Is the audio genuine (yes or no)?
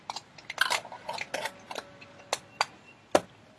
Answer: yes